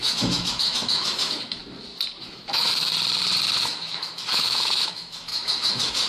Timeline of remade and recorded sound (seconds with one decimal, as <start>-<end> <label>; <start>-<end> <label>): 0.0-1.6 remade; 1.6-2.2 recorded; 2.2-2.9 remade; 2.9-3.6 recorded; 3.6-6.1 remade